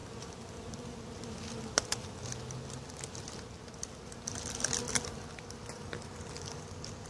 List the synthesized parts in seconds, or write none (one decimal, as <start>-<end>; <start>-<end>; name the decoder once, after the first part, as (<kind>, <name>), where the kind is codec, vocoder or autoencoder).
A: none